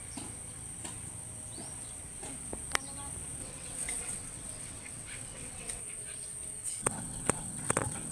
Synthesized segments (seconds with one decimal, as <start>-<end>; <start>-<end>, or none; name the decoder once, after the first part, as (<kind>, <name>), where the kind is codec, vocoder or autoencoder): 3.4-5.8 (vocoder, WaveNeXt); 6.6-8.1